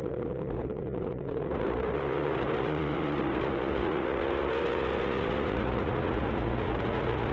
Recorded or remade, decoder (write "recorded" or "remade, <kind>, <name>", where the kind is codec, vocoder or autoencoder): remade, vocoder, Vocos